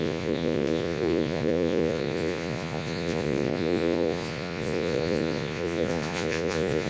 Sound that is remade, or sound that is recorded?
remade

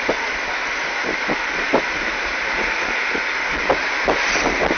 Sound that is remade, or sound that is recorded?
recorded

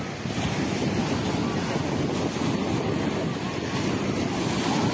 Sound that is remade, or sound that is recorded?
recorded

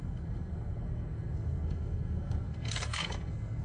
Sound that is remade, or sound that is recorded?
remade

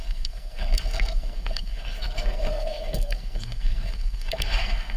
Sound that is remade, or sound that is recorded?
remade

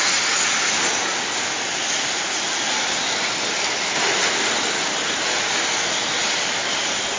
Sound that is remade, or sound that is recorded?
recorded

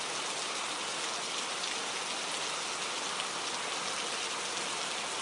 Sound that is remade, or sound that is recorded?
recorded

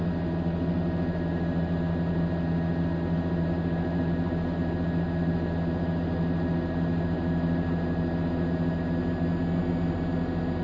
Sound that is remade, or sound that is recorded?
recorded